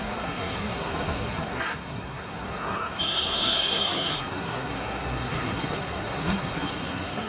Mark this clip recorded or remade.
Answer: remade